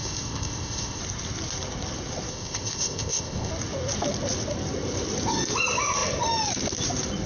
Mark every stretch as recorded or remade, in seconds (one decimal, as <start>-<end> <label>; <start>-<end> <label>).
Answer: 0.0-1.0 remade; 1.0-2.3 recorded; 2.3-3.5 remade; 3.5-7.3 recorded